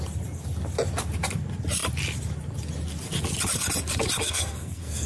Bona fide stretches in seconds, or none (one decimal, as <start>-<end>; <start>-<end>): 0.0-4.2